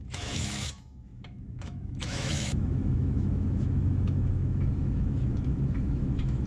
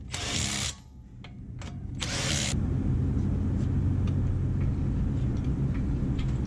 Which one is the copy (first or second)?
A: first